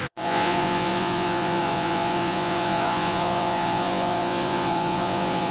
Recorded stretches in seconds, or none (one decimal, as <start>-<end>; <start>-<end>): none